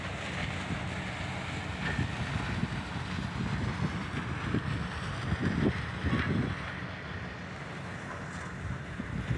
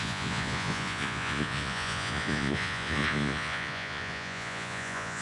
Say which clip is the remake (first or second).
second